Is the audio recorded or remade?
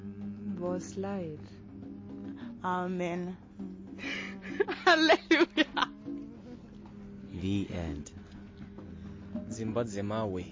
recorded